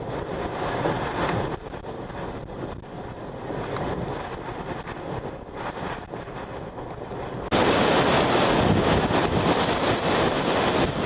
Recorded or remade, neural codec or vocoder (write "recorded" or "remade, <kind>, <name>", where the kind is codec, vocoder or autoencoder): recorded